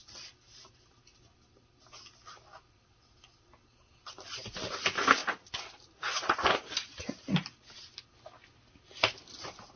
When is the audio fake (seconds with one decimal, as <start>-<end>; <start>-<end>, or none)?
0.0-0.7